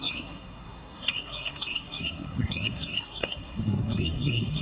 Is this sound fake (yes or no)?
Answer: yes